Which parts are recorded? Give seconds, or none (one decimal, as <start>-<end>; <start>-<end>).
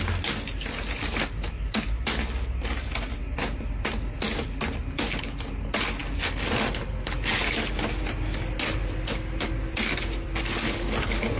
0.0-11.4